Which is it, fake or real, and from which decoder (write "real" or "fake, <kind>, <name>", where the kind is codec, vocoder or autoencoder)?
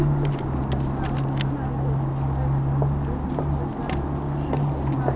real